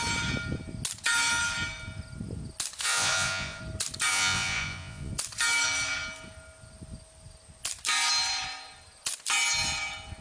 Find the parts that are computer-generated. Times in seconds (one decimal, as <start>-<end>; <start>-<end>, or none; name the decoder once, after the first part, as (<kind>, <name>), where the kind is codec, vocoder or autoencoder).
2.8-3.6 (vocoder, Vocos); 4.1-5.1